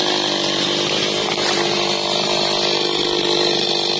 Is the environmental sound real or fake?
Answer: real